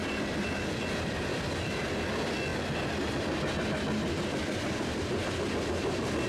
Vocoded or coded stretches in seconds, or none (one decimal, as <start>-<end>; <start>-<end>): 0.0-0.6; 1.3-1.9; 2.5-5.3